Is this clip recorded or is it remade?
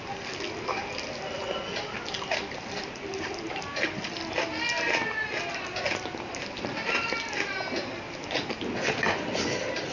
recorded